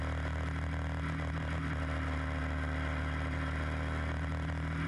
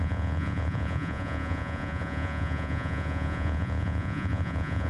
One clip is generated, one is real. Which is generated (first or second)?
second